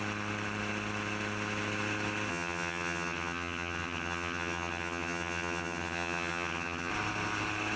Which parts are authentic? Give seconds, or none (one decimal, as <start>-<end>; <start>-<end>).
0.0-2.3; 6.9-7.8